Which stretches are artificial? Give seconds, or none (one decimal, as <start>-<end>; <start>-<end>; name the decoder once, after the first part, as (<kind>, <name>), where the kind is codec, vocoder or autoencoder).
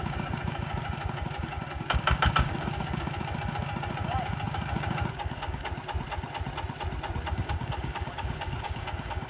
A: 0.0-5.7 (codec, DAC); 7.3-9.3